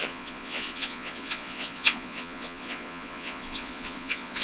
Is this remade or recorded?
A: remade